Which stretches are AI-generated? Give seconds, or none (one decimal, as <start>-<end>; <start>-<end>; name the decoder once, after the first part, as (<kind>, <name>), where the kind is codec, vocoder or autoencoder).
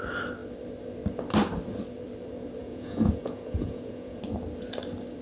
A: 2.6-4.2 (vocoder, Vocos)